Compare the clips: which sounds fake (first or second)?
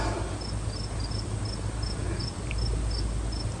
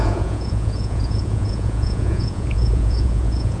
second